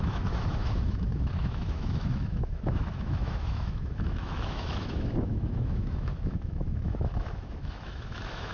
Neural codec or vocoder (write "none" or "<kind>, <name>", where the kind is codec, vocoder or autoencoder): autoencoder, DAC-VAE